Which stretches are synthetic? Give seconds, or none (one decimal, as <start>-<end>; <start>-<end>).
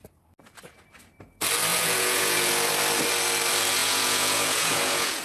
1.7-2.5; 3.8-5.2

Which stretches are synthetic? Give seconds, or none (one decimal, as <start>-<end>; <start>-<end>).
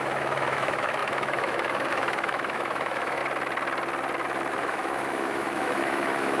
0.0-3.2; 4.5-6.4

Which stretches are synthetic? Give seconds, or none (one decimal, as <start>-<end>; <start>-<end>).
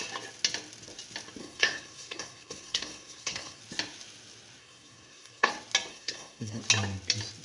1.4-3.6; 4.6-5.5; 5.9-6.6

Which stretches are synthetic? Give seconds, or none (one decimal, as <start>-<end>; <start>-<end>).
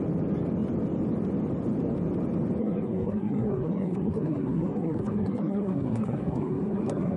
2.6-7.2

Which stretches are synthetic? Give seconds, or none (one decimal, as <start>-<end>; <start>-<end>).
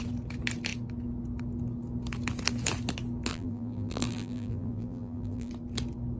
3.3-5.5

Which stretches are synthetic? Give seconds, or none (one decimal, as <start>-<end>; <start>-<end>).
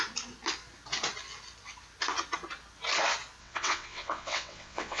3.4-5.0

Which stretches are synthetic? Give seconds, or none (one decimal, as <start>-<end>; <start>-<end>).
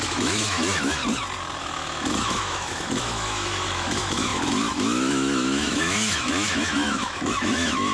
0.0-1.0; 1.6-7.9